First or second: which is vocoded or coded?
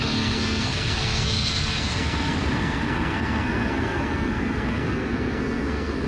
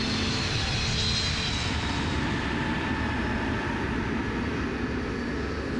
first